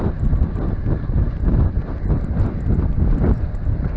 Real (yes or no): yes